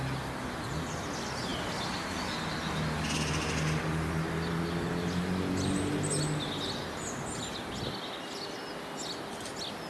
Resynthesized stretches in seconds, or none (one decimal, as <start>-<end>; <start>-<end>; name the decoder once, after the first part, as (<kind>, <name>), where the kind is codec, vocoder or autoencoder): none